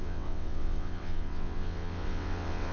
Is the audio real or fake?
fake